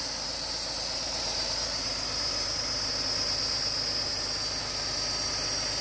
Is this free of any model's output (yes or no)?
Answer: yes